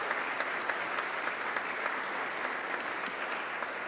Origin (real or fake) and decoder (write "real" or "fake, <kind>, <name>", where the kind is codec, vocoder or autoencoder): real